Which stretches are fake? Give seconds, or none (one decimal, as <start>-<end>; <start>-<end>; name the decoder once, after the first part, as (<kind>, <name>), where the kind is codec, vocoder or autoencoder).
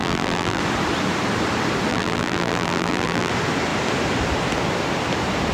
0.0-0.6 (vocoder, BigVGAN v2); 1.9-3.3